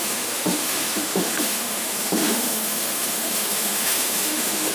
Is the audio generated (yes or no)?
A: yes